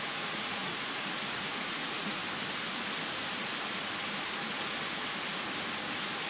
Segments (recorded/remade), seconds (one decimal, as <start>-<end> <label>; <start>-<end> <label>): 0.0-2.2 remade; 2.2-6.3 recorded